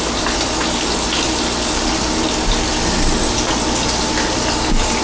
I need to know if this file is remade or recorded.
recorded